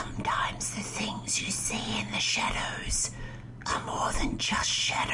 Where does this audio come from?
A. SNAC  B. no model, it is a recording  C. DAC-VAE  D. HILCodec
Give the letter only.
B